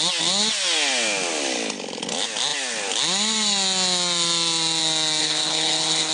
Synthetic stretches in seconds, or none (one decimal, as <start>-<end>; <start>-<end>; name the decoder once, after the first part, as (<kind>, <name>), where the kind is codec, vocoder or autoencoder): 5.2-6.1 (codec, HILCodec)